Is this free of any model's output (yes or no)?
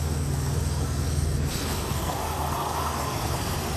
no